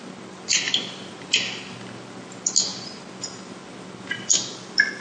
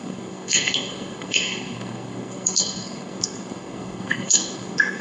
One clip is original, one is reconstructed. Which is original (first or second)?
first